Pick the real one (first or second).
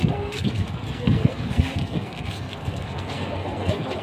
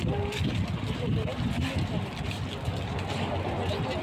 second